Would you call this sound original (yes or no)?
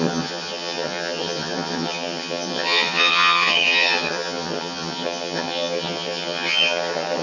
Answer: no